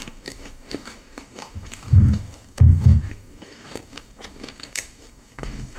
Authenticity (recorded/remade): remade